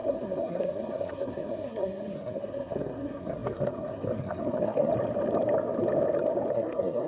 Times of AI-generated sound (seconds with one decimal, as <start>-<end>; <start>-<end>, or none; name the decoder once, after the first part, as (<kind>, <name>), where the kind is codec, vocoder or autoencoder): 0.0-4.9 (codec, SNAC); 6.5-7.1